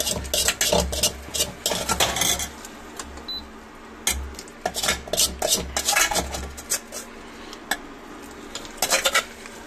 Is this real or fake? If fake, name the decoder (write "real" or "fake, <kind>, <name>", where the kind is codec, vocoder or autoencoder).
real